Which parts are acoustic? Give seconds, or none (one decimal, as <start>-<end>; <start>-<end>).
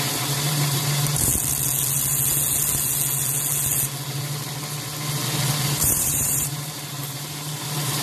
1.3-5.7